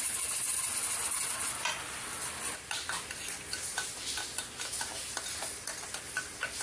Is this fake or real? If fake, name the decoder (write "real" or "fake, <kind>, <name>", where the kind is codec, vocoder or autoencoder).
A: real